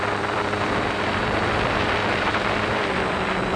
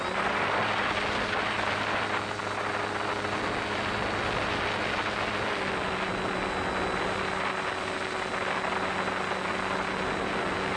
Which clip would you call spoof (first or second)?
first